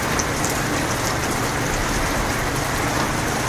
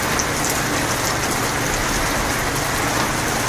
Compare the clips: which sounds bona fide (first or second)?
second